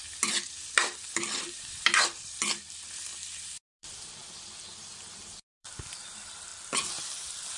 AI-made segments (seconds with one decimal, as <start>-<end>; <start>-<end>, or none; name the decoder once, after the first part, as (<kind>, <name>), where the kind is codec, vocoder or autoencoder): 0.5-4.2 (vocoder, BigVGAN v2); 5.5-6.5